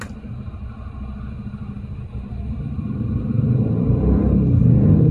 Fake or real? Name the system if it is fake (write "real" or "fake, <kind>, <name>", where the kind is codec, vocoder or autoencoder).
real